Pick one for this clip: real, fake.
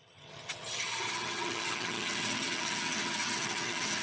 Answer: fake